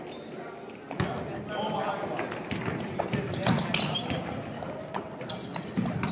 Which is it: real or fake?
real